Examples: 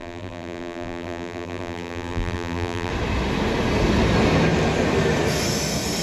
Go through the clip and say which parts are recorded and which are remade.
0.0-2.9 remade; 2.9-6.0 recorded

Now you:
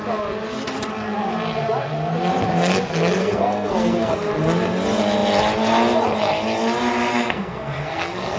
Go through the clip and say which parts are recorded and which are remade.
0.0-3.2 recorded; 3.2-4.1 remade; 4.1-7.1 recorded; 7.1-8.4 remade

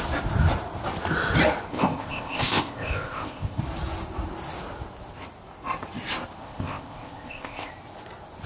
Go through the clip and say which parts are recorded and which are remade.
0.0-1.7 recorded; 1.7-3.6 remade; 3.6-6.4 recorded; 6.4-7.7 remade; 7.7-8.5 recorded

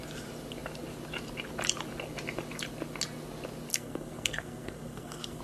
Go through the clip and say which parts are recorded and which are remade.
0.0-3.7 recorded; 3.7-5.4 remade

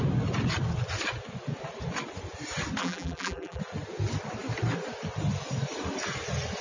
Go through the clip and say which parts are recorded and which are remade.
0.0-2.8 recorded; 2.8-3.6 remade; 3.6-6.6 recorded